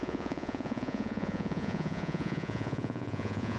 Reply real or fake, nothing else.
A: fake